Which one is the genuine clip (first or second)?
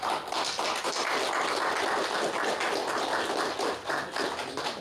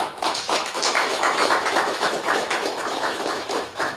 first